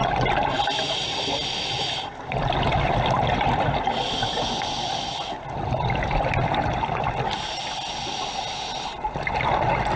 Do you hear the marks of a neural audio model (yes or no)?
no